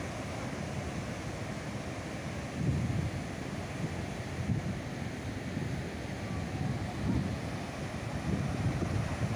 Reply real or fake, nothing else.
real